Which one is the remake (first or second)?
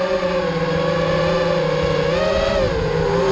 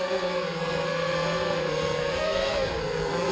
second